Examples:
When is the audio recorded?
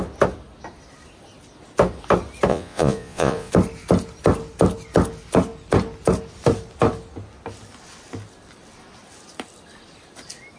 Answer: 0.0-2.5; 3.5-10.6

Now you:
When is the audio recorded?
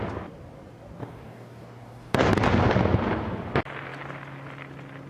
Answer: 0.0-1.0; 2.3-5.1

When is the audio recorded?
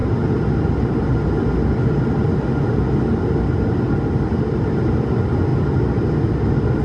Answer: 0.0-6.8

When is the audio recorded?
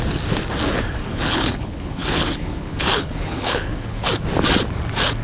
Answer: 0.0-1.0; 4.1-5.2